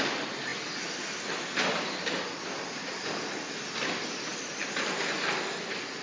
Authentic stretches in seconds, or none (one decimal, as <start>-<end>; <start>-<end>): 0.0-6.0